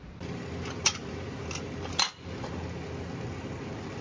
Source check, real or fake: real